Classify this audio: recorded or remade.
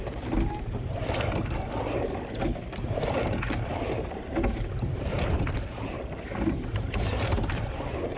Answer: remade